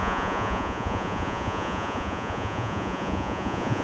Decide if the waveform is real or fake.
fake